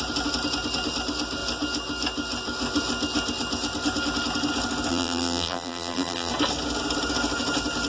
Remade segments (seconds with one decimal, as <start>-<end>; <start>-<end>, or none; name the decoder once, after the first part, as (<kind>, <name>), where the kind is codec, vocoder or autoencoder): 4.9-6.3 (vocoder, BigVGAN v2)